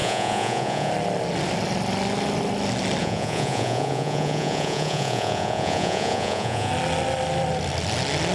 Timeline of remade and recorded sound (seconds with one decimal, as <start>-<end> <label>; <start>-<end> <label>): 0.0-0.9 remade; 0.9-3.0 recorded; 3.0-6.7 remade; 6.7-8.3 recorded